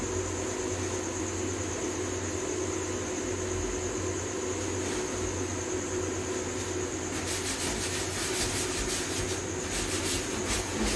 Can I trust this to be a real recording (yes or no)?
yes